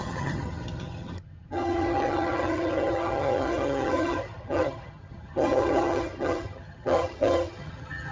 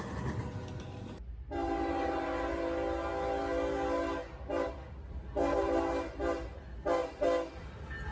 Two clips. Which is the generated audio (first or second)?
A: first